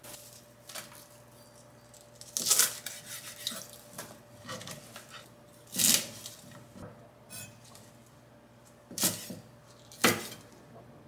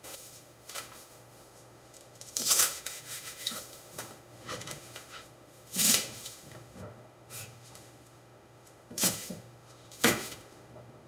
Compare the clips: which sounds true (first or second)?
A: first